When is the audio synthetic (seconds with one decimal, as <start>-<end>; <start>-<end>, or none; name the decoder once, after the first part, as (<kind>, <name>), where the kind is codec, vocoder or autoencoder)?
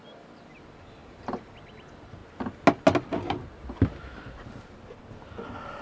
1.0-1.5 (vocoder, BigVGAN v2)